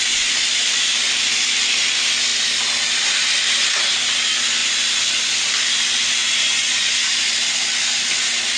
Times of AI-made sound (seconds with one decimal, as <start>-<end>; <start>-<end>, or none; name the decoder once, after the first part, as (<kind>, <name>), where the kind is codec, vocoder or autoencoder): 6.2-7.3 (vocoder, Vocos)